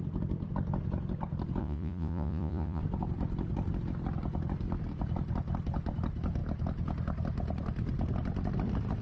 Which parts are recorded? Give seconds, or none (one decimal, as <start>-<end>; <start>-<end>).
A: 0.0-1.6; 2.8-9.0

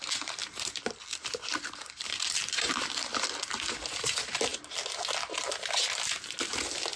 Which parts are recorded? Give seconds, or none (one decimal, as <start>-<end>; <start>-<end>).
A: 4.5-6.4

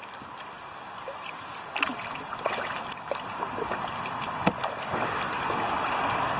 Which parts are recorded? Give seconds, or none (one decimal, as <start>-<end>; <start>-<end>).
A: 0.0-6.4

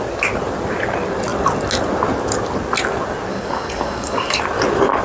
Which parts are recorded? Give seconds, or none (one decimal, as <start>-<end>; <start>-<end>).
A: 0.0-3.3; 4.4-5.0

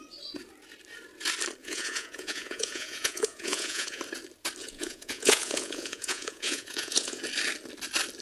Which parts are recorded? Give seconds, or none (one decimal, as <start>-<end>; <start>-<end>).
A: 0.0-1.6; 4.0-4.6; 7.2-8.2

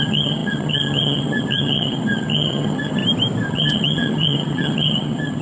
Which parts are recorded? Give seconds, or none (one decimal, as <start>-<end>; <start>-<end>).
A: 3.0-3.5